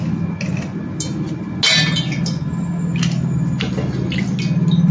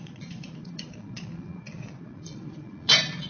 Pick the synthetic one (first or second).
second